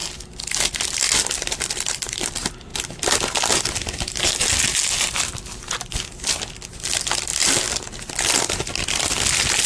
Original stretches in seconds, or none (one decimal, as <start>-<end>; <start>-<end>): 0.0-1.6; 2.7-6.5; 7.3-8.7